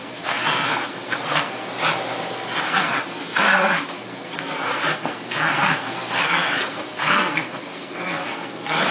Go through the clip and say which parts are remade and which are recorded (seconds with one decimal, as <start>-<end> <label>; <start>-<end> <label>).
0.0-1.7 remade; 1.7-2.3 recorded; 2.3-8.9 remade